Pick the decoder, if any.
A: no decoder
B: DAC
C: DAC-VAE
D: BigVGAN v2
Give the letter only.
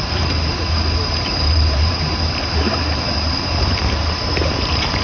D